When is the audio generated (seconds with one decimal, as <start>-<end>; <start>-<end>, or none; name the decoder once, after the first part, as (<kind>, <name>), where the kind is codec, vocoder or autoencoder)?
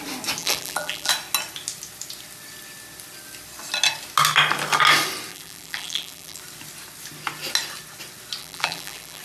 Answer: 0.4-1.1 (vocoder, BigVGAN v2); 5.3-6.4; 8.4-9.2